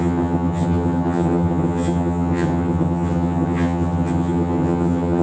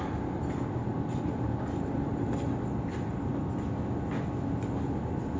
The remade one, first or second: first